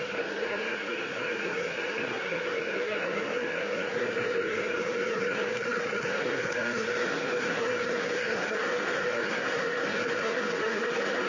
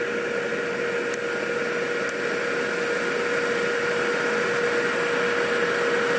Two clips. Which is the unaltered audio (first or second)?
second